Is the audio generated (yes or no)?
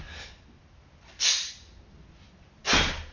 no